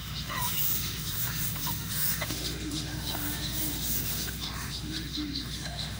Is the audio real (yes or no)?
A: no